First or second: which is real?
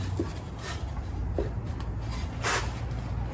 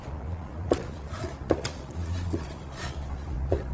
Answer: first